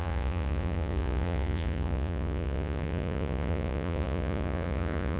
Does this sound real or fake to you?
fake